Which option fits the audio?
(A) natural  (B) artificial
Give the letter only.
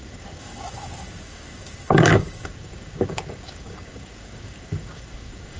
B